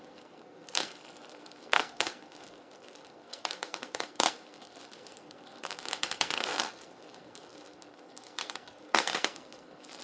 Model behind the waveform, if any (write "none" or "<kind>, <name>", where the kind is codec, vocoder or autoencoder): codec, SNAC